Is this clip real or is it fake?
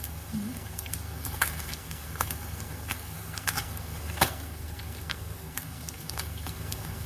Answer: fake